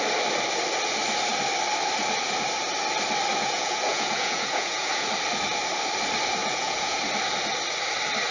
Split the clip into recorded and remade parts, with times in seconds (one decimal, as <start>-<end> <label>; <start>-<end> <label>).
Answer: 0.0-3.3 recorded; 3.3-5.1 remade; 5.1-6.4 recorded; 6.4-7.0 remade; 7.0-8.3 recorded